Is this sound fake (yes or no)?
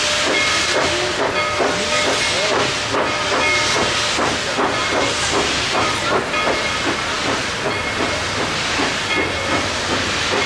no